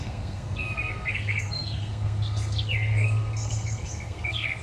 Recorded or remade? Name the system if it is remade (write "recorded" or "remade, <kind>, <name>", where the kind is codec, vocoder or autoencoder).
remade, codec, SNAC